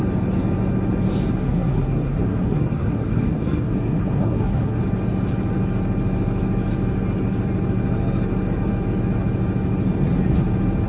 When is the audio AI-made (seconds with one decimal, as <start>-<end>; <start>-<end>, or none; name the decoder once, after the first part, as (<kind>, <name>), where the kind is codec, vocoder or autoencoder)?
1.4-4.8 (codec, SNAC)